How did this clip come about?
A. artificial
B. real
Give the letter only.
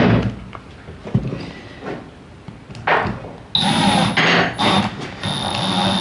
B